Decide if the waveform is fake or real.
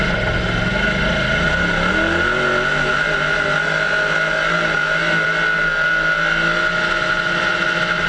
real